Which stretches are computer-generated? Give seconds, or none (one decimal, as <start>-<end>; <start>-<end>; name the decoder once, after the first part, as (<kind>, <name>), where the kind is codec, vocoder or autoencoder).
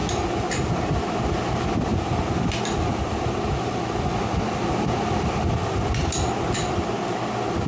none